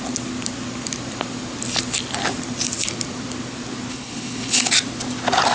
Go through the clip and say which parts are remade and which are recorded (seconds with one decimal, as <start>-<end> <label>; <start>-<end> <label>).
0.0-3.9 recorded; 3.9-4.7 remade; 4.7-5.5 recorded